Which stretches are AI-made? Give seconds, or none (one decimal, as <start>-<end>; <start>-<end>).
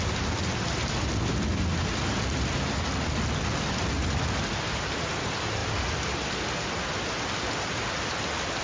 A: none